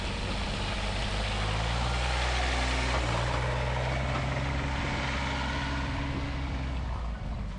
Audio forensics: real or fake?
real